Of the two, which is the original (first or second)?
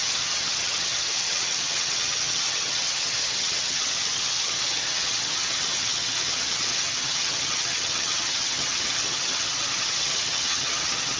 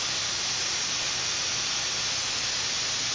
second